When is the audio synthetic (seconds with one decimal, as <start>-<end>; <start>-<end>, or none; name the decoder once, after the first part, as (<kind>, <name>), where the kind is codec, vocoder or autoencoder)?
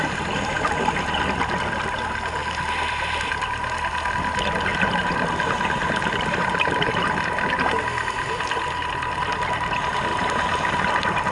4.7-7.8 (vocoder, BigVGAN v2); 10.1-10.9